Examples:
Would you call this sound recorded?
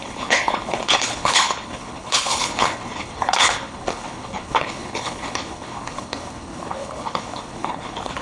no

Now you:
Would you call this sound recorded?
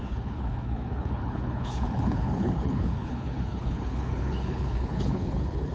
no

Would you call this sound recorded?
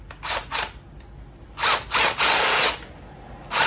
yes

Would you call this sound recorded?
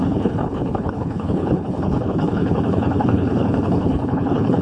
no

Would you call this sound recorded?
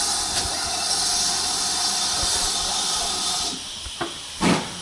yes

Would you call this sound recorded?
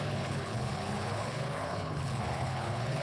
no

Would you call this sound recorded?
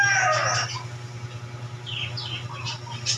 yes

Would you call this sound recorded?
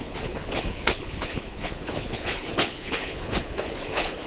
no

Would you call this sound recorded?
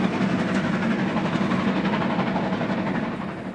yes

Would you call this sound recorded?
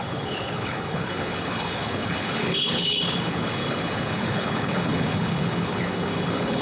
no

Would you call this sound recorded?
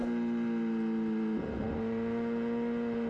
yes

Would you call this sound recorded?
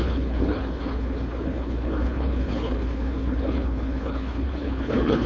no